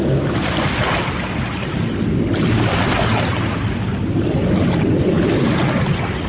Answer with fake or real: real